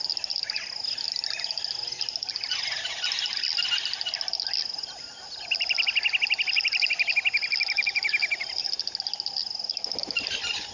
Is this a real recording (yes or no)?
yes